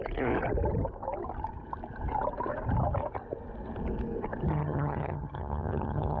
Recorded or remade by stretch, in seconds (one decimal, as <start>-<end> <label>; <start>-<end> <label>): 0.0-4.5 recorded; 4.5-6.2 remade